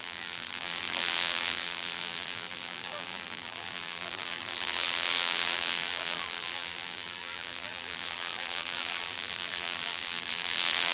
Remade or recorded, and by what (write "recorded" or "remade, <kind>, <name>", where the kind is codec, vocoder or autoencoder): remade, vocoder, BigVGAN v2